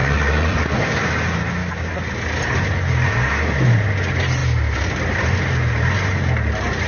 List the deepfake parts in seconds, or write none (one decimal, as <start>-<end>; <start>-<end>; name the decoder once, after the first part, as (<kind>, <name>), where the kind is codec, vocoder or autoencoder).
0.0-0.6 (vocoder, Vocos)